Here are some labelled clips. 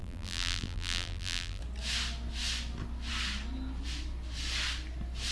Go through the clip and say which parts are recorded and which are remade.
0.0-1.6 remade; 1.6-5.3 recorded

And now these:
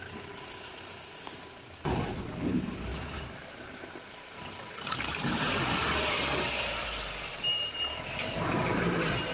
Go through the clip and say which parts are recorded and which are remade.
0.0-1.1 remade; 1.1-2.1 recorded; 2.1-9.3 remade

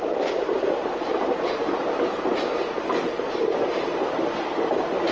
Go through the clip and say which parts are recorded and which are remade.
0.0-3.9 remade; 3.9-5.1 recorded

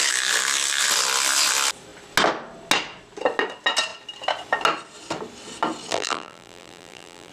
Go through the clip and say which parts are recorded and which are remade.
0.0-5.9 recorded; 5.9-7.3 remade

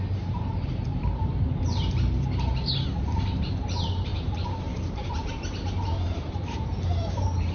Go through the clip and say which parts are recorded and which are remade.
0.0-7.5 remade